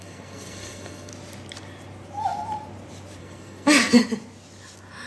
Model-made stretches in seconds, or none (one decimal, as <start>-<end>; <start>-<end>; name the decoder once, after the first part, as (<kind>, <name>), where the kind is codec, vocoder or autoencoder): 0.0-1.1 (codec, SNAC); 3.2-4.0